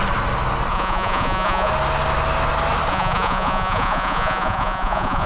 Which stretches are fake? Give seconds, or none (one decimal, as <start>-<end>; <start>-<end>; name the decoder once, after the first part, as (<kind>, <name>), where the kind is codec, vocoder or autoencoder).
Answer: 0.7-1.7 (vocoder, Vocos); 2.9-5.3